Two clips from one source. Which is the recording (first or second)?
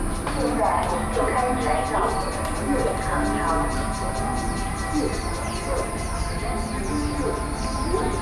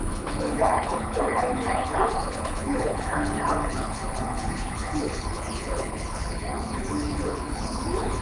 first